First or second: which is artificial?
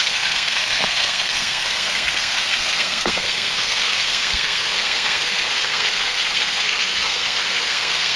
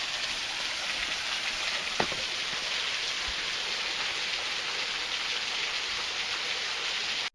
first